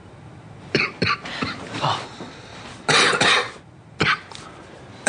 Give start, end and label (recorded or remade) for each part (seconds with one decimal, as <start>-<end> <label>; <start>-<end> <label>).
0.0-5.1 remade